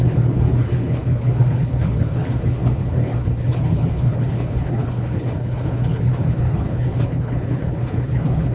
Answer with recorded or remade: remade